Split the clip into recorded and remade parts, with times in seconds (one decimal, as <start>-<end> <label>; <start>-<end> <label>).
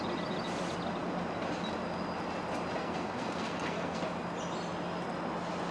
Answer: 0.0-2.8 recorded; 2.8-4.0 remade; 4.0-5.7 recorded